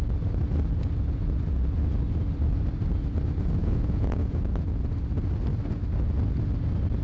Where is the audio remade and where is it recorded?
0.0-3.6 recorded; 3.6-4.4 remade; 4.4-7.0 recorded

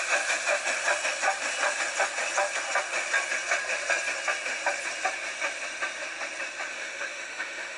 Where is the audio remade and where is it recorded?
0.0-6.7 recorded; 6.7-7.8 remade

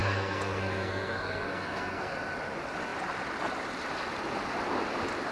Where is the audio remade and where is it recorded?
0.0-2.1 remade; 2.1-5.3 recorded

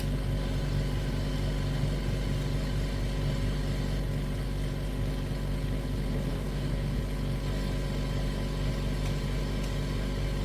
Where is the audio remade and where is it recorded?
0.0-6.3 recorded; 6.3-7.0 remade; 7.0-10.4 recorded

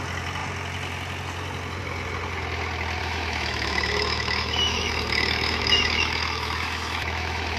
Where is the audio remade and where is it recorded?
0.0-3.0 recorded; 3.0-7.6 remade